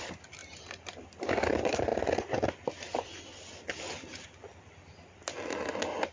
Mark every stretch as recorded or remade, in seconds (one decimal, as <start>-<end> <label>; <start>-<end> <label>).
0.0-0.4 recorded; 0.4-1.3 remade; 1.3-6.1 recorded